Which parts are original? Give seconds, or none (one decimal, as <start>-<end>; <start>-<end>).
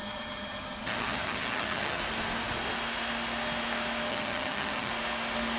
2.0-4.1; 4.9-5.6